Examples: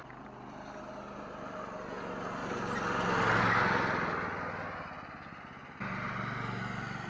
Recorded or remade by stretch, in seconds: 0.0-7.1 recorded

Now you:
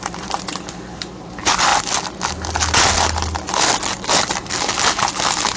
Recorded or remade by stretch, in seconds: 0.0-5.6 recorded

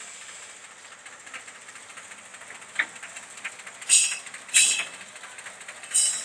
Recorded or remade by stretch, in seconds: 0.0-6.2 recorded

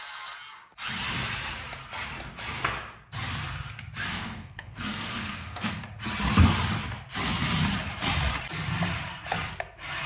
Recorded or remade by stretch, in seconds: 0.0-4.1 recorded; 4.1-5.7 remade; 5.7-10.1 recorded

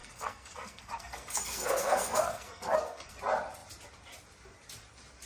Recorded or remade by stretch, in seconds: 0.0-3.2 remade; 3.2-5.3 recorded

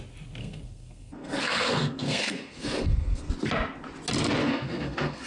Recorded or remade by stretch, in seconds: 0.0-0.4 recorded; 0.4-3.3 remade; 3.3-4.4 recorded; 4.4-5.3 remade

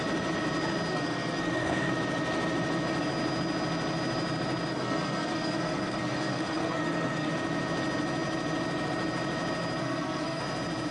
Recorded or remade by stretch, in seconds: 0.0-0.9 recorded; 0.9-1.9 remade; 1.9-4.7 recorded; 4.7-7.3 remade; 7.3-9.8 recorded; 9.8-10.4 remade; 10.4-10.9 recorded